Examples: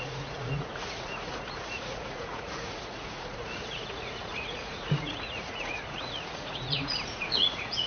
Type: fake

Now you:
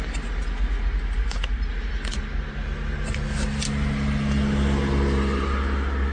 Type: real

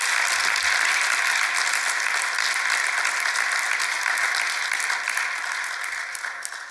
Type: real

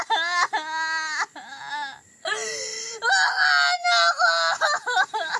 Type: real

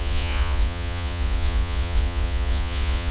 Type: fake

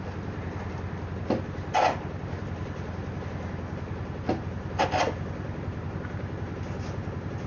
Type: real